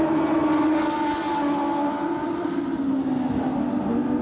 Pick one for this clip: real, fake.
real